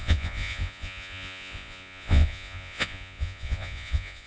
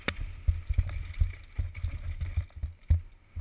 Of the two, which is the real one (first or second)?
second